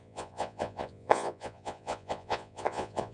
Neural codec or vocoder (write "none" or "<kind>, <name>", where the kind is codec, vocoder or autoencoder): vocoder, Vocos